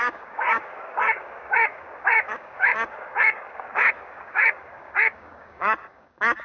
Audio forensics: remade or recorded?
remade